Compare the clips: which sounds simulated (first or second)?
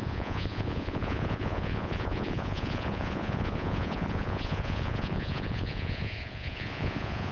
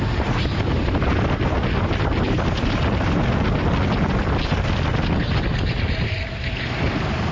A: first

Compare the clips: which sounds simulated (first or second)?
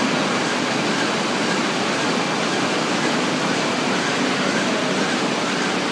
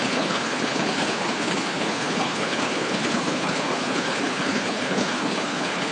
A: second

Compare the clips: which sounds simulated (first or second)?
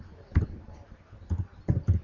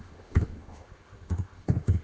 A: second